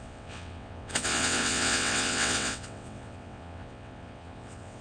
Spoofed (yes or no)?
yes